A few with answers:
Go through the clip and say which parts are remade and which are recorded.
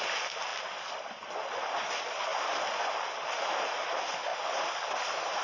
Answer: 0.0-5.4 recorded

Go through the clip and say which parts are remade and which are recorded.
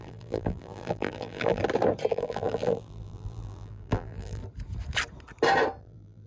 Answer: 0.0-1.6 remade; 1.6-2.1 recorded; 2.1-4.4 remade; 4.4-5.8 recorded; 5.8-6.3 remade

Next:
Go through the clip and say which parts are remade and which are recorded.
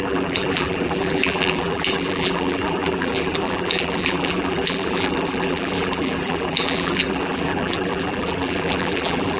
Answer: 0.0-9.4 remade